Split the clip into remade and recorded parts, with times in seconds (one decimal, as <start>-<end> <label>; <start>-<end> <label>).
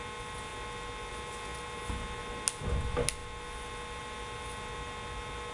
0.0-5.5 recorded